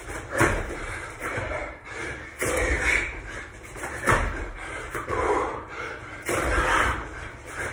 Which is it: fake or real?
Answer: fake